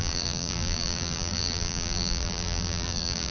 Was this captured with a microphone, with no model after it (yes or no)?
no